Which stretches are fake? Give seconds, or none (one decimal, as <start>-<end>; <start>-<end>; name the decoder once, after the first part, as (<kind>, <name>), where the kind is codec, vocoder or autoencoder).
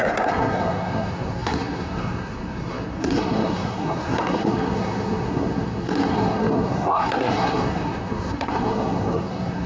0.0-9.7 (codec, SNAC)